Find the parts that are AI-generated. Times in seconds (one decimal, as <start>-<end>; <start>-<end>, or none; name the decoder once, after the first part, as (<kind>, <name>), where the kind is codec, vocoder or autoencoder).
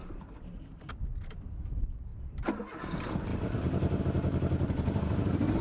0.0-0.9 (vocoder, BigVGAN v2); 2.1-2.6; 3.3-4.0